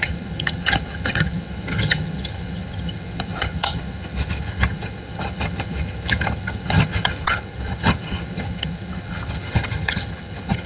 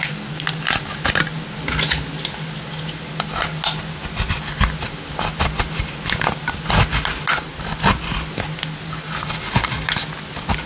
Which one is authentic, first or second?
second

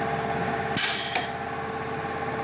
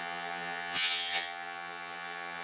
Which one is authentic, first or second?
first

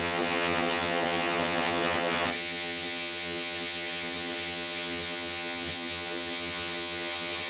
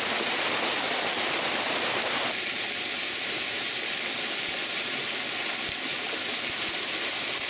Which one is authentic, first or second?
second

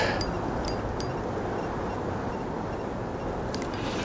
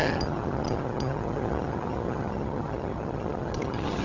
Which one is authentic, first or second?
first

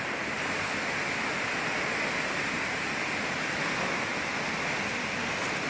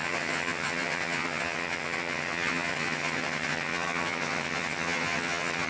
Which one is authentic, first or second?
first